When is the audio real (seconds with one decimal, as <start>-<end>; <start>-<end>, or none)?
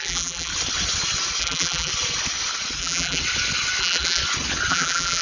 0.5-1.4; 1.9-2.8; 3.2-3.8; 4.2-4.7